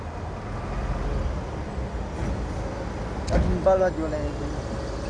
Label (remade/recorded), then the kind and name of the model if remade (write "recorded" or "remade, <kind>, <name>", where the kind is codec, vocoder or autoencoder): recorded